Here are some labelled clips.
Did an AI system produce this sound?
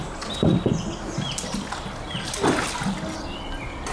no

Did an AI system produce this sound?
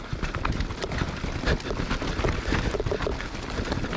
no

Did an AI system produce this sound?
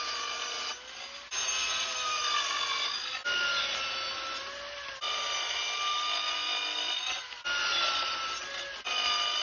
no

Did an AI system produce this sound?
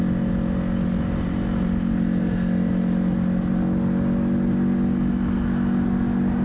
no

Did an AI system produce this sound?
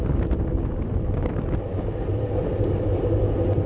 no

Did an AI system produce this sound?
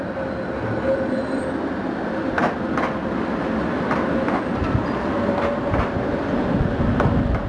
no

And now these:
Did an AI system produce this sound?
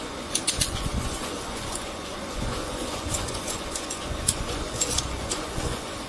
yes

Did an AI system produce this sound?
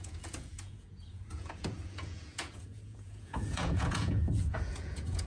yes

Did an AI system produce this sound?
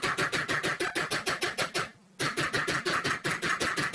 no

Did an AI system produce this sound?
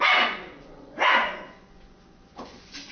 yes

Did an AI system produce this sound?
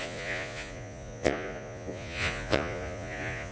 yes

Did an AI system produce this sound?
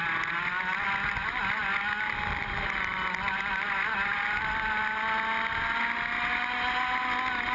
no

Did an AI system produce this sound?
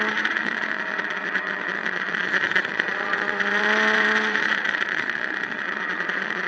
yes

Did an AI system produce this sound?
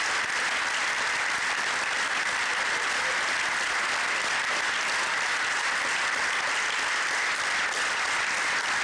no